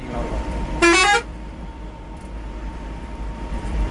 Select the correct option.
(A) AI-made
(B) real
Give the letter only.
A